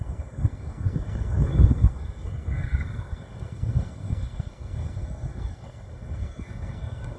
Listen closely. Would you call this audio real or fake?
fake